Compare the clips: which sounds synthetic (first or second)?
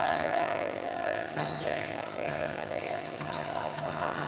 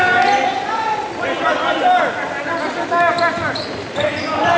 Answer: first